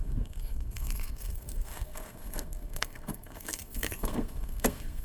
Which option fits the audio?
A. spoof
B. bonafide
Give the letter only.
A